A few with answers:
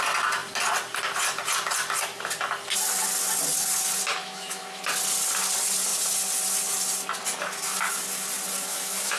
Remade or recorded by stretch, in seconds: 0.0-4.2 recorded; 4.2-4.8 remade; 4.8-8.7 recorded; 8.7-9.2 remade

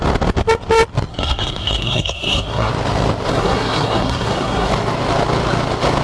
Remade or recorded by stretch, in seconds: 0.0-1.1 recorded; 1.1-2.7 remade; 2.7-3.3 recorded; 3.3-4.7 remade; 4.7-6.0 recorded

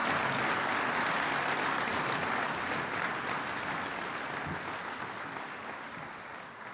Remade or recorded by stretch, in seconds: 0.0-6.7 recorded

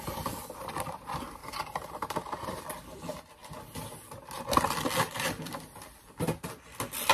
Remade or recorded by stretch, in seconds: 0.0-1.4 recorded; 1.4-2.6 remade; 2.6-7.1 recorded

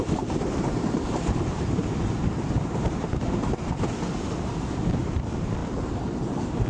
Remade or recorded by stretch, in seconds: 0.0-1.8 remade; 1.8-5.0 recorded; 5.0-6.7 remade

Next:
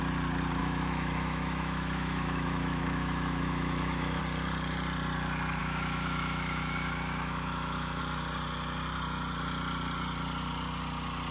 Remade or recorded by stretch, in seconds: 0.0-0.6 recorded; 0.6-4.2 remade; 4.2-5.6 recorded; 5.6-8.0 remade; 8.0-11.3 recorded

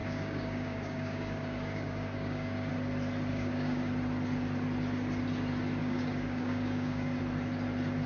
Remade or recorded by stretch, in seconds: 0.0-2.7 remade; 2.7-3.3 recorded; 3.3-3.9 remade; 3.9-5.8 recorded; 5.8-7.2 remade; 7.2-8.1 recorded